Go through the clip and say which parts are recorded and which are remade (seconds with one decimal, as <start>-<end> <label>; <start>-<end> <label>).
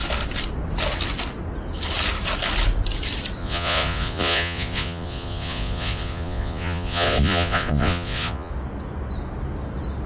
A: 0.0-3.4 recorded; 3.4-8.5 remade; 8.5-10.1 recorded